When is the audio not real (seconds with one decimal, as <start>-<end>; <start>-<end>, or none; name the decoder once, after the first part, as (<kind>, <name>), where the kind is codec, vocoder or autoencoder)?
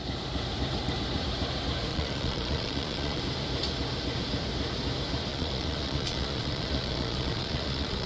1.9-3.2 (vocoder, Vocos); 5.3-8.1